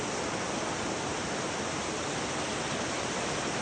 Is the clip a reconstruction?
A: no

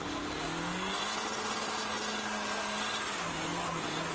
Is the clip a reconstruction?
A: no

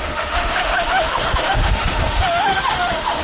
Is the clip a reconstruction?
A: yes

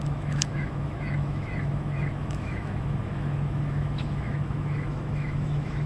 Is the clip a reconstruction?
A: yes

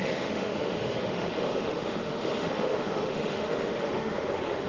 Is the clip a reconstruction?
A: yes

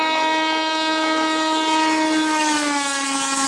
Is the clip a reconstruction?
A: yes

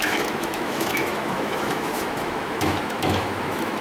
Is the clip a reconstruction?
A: yes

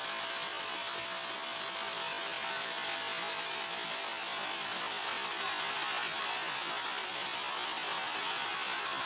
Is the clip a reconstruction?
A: no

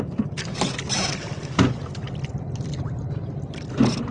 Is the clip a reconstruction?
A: no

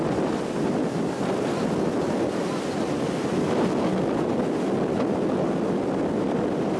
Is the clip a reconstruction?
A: no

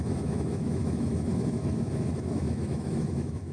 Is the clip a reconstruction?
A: yes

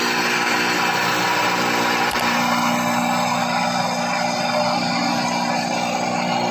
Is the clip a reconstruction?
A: no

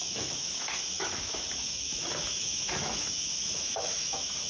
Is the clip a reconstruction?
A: yes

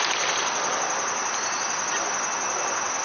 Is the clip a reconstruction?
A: no